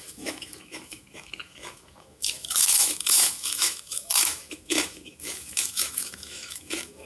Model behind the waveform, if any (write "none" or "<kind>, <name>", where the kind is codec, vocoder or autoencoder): autoencoder, DAC-VAE